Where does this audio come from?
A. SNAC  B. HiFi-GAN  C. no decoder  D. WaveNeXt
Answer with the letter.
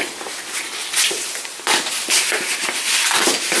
C